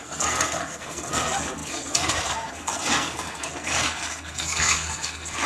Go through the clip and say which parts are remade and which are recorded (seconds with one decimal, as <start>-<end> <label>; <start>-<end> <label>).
0.0-5.5 remade